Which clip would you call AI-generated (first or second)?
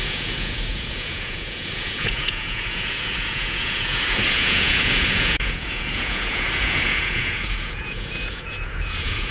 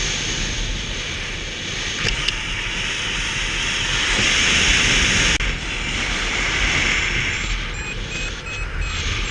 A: first